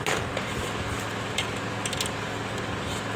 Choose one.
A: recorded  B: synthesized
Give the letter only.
A